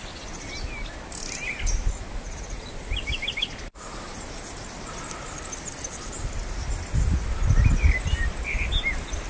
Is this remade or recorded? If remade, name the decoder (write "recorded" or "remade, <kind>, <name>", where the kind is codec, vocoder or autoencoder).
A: recorded